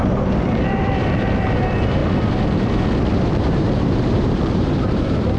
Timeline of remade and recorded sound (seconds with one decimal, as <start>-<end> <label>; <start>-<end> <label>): 0.0-2.0 remade; 2.0-3.3 recorded; 3.3-5.4 remade